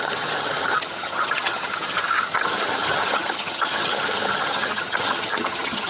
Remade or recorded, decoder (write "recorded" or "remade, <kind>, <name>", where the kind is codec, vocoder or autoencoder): remade, vocoder, HiFi-GAN